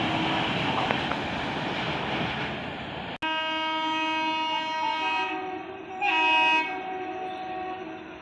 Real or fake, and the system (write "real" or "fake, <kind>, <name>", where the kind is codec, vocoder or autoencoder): real